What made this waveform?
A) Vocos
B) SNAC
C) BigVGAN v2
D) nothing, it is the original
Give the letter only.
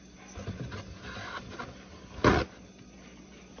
D